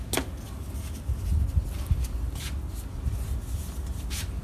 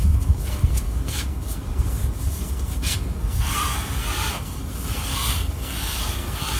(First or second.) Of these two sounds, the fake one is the second